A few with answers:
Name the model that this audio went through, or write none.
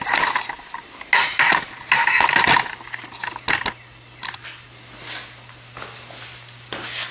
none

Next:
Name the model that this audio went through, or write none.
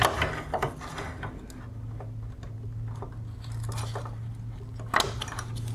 none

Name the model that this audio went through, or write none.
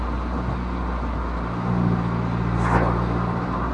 none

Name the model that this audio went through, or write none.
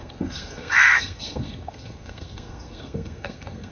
codec, SNAC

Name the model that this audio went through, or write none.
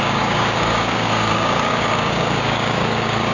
codec, DAC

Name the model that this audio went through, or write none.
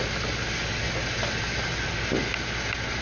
none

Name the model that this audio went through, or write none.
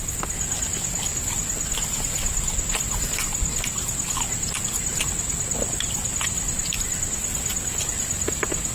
none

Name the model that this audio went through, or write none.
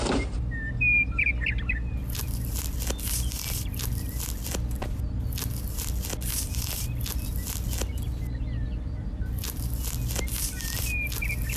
none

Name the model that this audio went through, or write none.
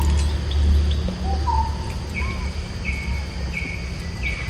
none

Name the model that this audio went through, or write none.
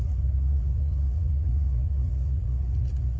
vocoder, Vocos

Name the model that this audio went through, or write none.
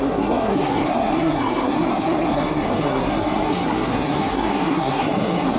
codec, SNAC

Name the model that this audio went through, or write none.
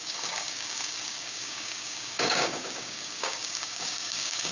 codec, DAC